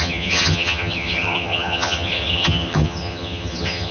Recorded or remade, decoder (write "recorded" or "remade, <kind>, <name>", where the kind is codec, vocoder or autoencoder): remade, vocoder, HiFi-GAN